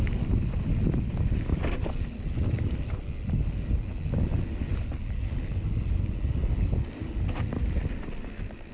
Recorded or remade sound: recorded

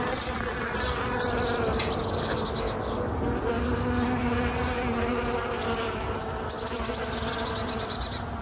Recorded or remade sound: recorded